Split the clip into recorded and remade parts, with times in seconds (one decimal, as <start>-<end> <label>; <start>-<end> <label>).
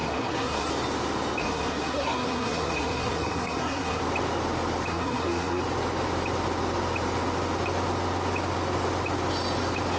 0.0-0.7 remade; 0.7-1.4 recorded; 1.4-4.0 remade; 4.0-4.9 recorded; 4.9-5.6 remade; 5.6-10.0 recorded